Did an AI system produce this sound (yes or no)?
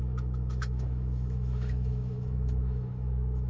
yes